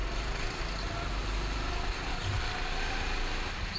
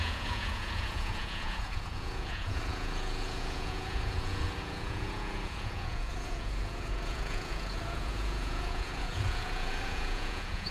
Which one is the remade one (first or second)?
second